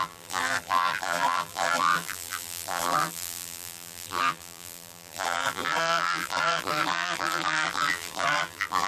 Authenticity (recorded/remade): remade